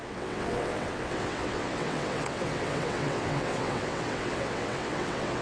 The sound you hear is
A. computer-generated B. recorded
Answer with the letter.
A